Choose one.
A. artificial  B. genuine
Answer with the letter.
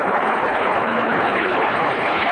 A